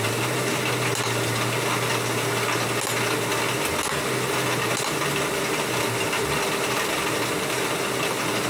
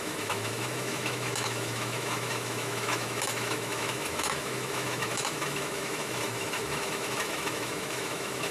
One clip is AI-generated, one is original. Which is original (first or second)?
first